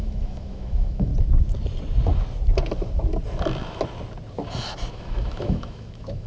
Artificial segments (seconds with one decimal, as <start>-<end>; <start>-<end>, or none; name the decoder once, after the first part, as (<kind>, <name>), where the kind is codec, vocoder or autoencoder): 0.0-1.1 (autoencoder, DAC-VAE); 4.9-6.3

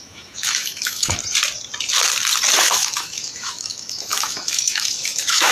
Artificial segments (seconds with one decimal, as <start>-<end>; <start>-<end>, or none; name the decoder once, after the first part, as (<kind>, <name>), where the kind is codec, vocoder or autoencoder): 0.0-1.2 (autoencoder, DAC-VAE); 2.6-5.5

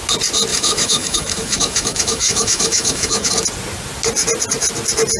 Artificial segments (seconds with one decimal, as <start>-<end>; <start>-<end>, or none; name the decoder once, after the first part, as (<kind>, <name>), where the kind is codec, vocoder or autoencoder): 0.5-3.3 (autoencoder, DAC-VAE)

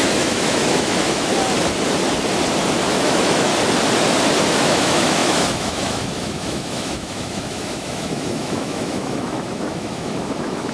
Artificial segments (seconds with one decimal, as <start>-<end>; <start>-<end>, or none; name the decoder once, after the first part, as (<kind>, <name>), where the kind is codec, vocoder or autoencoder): 0.0-1.3 (autoencoder, DAC-VAE); 2.9-3.5; 4.4-10.7

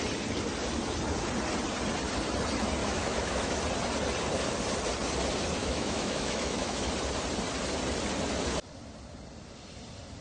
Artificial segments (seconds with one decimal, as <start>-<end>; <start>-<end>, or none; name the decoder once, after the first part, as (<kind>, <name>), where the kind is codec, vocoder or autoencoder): 2.8-3.6 (autoencoder, DAC-VAE); 5.6-6.9

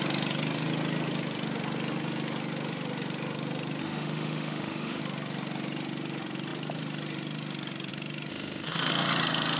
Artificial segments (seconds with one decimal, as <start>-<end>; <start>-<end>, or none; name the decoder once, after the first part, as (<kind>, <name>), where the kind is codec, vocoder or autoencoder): 3.8-5.0 (autoencoder, DAC-VAE); 8.3-8.9